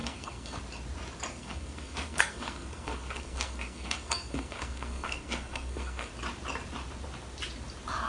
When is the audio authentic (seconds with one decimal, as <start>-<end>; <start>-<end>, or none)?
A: 0.6-1.3; 6.1-8.1